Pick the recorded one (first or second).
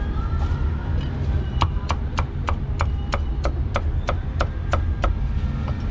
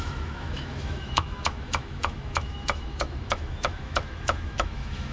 first